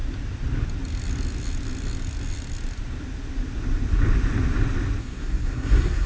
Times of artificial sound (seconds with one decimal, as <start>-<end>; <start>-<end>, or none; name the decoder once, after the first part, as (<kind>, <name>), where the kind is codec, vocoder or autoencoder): 5.0-6.1 (codec, SNAC)